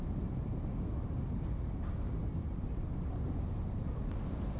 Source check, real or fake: real